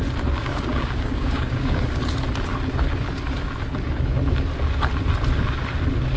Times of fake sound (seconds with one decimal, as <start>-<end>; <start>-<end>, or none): 0.4-2.0